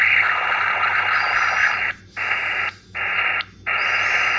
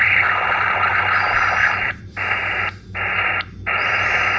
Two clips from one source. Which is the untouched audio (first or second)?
first